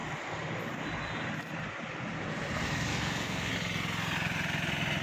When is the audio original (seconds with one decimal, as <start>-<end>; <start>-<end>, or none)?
0.0-2.9; 3.5-5.0